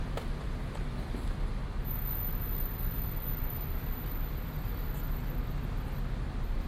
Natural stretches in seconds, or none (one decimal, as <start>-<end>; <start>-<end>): 0.0-6.7